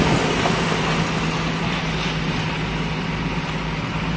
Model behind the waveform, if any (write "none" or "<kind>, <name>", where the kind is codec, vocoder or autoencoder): none